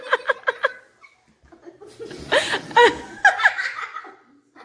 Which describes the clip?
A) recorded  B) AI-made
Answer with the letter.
A